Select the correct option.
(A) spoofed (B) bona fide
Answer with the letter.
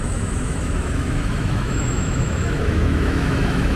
A